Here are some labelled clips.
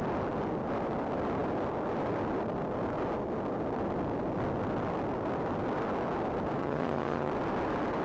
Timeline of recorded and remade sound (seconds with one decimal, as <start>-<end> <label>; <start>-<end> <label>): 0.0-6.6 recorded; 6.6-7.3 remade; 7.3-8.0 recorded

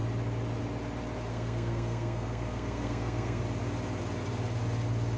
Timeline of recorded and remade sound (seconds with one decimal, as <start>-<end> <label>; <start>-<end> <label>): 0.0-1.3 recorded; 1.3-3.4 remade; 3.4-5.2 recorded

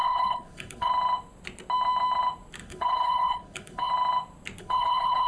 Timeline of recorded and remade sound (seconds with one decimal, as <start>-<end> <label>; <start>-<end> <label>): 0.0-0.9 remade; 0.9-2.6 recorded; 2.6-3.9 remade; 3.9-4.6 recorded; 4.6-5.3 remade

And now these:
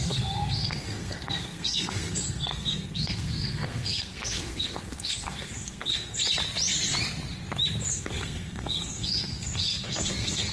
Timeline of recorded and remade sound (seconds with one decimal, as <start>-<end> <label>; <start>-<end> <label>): 0.0-6.2 remade; 6.2-7.9 recorded; 7.9-10.5 remade

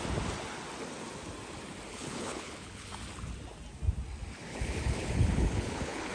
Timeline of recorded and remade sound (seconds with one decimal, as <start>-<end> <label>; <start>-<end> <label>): 0.0-1.9 recorded; 1.9-2.9 remade; 2.9-4.5 recorded; 4.5-6.1 remade